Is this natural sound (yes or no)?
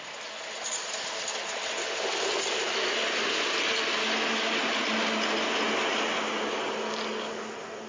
yes